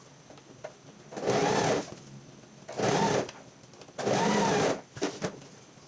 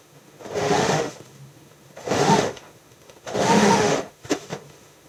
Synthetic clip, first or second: second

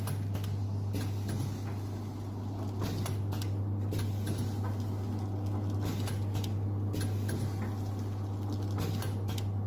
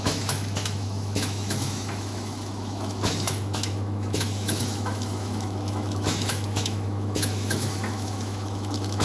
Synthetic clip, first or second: second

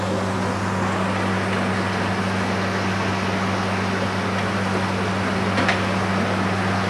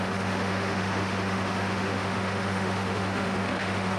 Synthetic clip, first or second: second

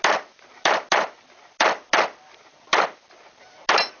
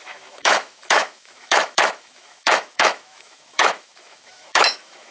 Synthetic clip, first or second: second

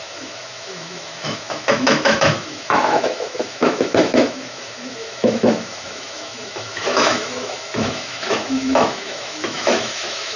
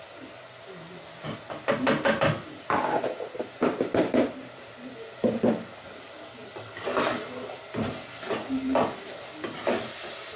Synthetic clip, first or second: first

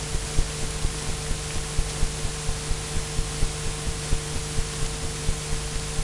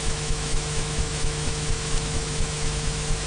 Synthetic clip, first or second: second